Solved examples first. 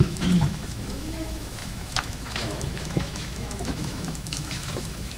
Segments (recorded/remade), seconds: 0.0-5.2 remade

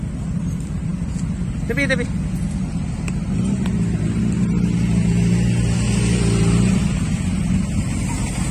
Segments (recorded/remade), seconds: 0.0-8.5 recorded